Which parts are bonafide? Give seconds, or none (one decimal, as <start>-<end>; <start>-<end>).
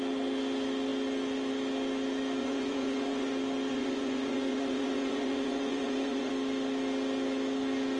0.0-2.4; 3.3-3.7; 6.3-8.0